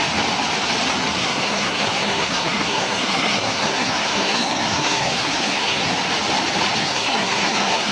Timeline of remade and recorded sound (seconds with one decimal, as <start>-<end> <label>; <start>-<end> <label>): 0.0-1.2 recorded; 1.2-5.9 remade; 5.9-6.8 recorded; 6.8-7.9 remade